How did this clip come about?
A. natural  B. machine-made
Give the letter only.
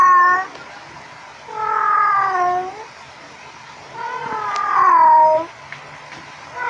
A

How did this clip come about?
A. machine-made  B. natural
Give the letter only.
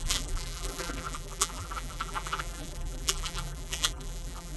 A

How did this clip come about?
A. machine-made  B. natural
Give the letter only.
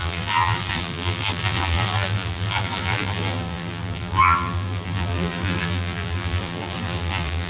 A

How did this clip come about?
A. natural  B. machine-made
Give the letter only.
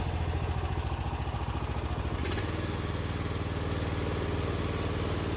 A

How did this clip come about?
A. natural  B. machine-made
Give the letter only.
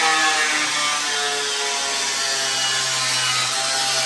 A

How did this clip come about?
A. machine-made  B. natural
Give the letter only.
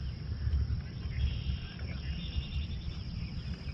A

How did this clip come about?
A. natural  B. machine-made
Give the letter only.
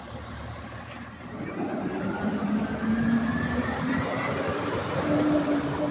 B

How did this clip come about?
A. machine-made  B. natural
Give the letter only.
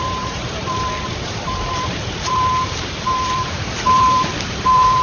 A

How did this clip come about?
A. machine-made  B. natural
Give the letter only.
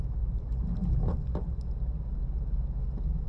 B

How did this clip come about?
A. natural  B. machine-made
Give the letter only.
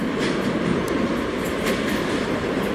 A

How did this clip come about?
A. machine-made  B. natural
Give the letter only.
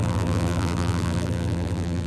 A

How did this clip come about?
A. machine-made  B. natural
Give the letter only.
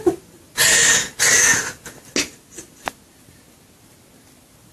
B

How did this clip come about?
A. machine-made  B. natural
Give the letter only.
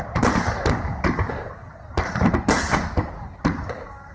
B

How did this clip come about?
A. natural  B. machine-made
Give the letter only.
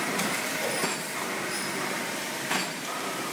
B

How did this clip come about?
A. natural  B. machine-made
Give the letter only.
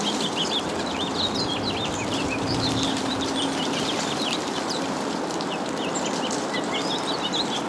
B